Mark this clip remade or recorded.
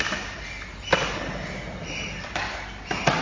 recorded